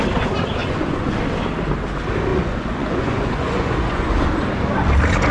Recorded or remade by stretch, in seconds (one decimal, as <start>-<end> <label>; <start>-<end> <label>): 0.0-0.6 recorded; 0.6-1.1 remade; 1.1-2.3 recorded; 2.3-4.1 remade; 4.1-5.3 recorded